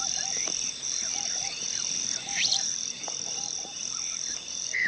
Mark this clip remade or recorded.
remade